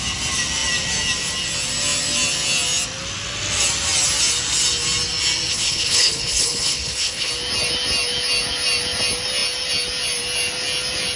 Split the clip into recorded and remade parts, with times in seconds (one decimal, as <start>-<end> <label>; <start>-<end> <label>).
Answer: 0.0-5.5 recorded; 5.5-7.3 remade; 7.3-11.2 recorded

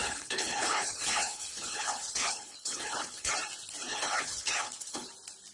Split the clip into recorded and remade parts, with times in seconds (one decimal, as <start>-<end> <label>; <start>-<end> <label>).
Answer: 0.0-3.3 remade; 3.3-3.9 recorded; 3.9-5.1 remade; 5.1-5.5 recorded

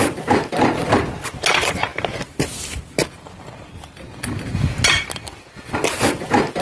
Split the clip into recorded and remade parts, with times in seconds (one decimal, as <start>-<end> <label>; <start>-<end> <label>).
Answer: 0.0-6.6 recorded

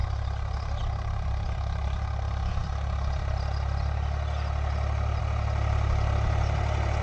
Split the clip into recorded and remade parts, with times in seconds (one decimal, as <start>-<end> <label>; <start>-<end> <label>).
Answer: 0.0-7.0 recorded

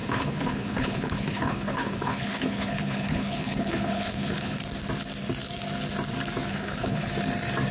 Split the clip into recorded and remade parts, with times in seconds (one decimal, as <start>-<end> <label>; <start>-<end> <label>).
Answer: 0.0-4.6 remade; 4.6-6.5 recorded; 6.5-7.1 remade; 7.1-7.7 recorded

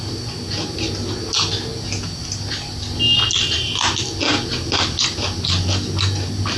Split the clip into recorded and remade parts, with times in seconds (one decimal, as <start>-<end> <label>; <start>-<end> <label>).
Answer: 0.0-6.6 recorded

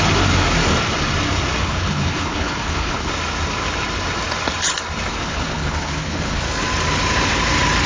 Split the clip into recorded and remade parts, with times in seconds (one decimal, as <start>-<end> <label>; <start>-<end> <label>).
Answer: 0.0-1.6 recorded; 1.6-3.1 remade; 3.1-5.1 recorded; 5.1-6.4 remade; 6.4-7.9 recorded

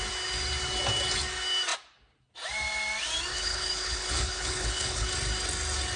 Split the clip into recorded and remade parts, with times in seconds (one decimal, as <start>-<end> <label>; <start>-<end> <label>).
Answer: 0.0-3.3 recorded; 3.3-5.1 remade; 5.1-6.0 recorded